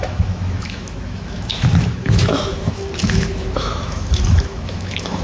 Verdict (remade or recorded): remade